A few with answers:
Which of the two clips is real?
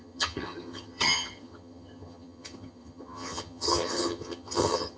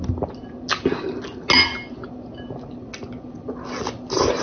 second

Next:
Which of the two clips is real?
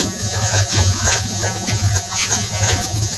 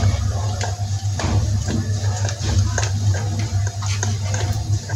second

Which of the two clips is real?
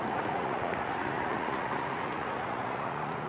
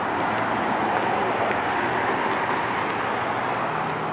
second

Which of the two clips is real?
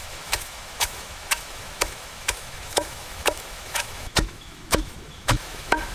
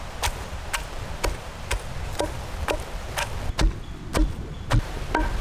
second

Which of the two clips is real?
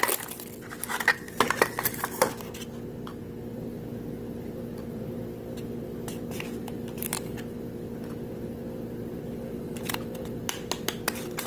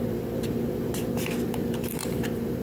first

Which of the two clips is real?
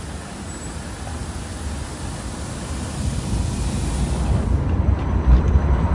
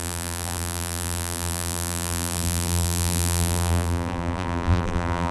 first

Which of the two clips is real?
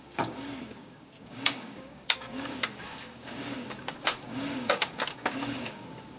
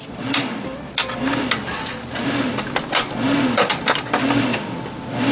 second